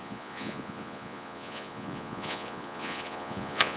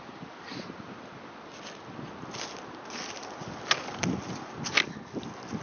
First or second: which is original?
second